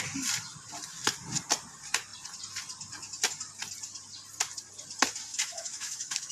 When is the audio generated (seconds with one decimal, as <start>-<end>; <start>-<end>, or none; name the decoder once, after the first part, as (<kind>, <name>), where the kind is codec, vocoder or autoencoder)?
5.3-6.3 (autoencoder, DAC-VAE)